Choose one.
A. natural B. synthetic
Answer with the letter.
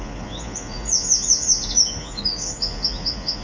B